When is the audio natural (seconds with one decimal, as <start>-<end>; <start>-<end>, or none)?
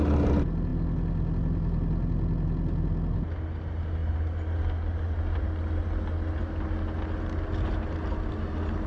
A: 0.0-8.9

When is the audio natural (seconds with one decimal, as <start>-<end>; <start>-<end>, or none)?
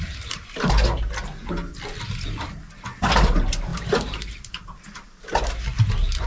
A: 0.0-3.7; 4.8-6.3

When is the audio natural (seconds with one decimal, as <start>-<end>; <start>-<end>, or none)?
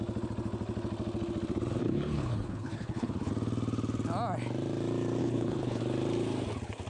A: 0.0-1.8; 3.3-5.2; 5.8-6.9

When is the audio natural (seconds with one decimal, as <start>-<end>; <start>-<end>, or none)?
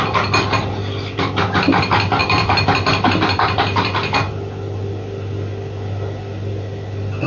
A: 0.0-7.3